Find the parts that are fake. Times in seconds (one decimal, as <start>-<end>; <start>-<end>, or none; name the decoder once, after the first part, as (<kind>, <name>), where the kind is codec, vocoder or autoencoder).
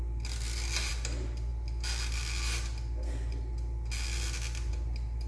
none